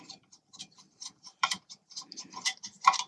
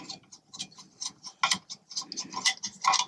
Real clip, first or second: second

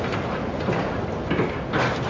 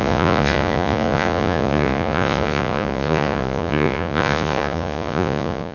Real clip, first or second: first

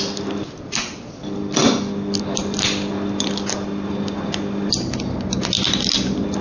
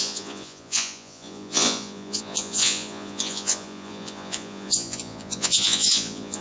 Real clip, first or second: first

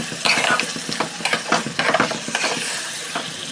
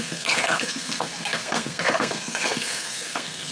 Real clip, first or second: first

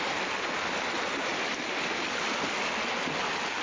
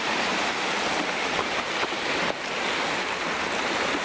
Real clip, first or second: first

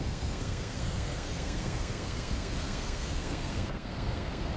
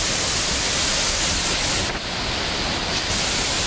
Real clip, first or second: second